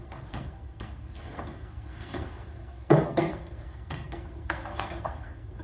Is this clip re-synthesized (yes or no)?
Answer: yes